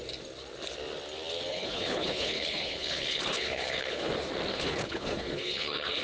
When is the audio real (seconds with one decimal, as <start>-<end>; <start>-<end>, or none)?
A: 0.0-1.5; 4.1-4.5